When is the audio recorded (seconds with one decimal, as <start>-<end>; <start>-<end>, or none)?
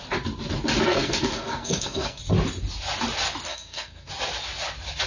0.0-0.9; 2.2-3.5; 4.1-5.1